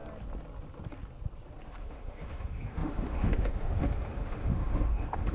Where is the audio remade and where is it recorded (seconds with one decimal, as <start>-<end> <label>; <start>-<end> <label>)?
0.0-1.8 recorded; 1.8-5.3 remade